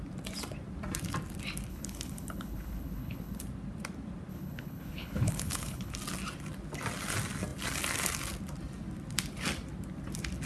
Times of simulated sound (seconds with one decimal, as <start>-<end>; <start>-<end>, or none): 1.7-3.4; 4.3-5.9